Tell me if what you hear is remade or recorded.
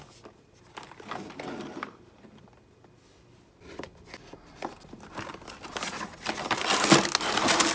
recorded